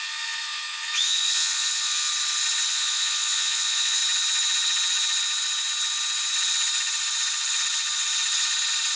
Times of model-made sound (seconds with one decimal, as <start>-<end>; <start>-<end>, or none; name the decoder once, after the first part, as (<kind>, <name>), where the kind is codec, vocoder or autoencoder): 0.0-2.1 (vocoder, Vocos); 2.7-4.0